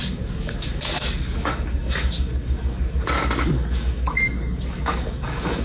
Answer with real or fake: fake